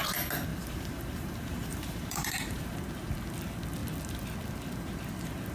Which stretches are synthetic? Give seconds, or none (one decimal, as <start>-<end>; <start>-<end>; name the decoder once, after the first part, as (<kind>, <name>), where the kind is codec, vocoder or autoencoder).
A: 0.5-2.8 (vocoder, BigVGAN v2)